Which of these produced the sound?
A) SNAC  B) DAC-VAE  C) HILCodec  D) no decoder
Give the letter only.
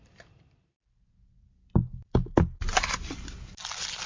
D